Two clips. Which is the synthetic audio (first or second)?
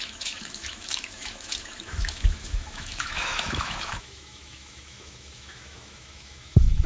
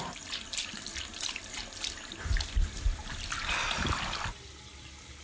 first